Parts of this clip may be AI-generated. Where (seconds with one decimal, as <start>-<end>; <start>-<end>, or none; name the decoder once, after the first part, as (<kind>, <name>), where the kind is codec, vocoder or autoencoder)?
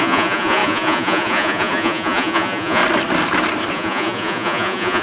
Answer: 0.0-2.8 (vocoder, Vocos); 3.7-5.0